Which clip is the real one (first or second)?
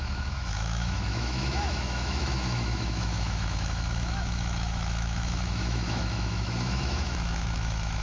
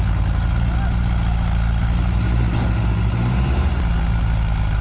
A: second